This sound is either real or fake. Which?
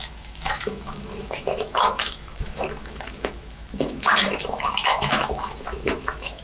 fake